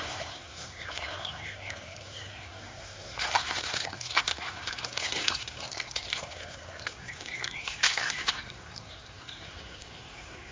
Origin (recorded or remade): remade